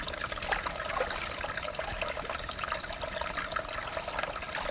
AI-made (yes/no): no